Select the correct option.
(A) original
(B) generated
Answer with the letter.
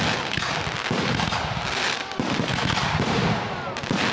A